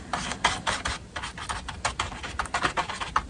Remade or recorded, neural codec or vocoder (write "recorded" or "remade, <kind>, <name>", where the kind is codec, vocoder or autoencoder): recorded